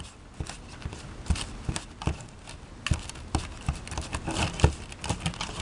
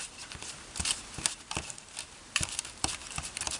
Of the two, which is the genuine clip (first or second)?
first